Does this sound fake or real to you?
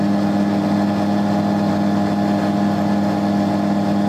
real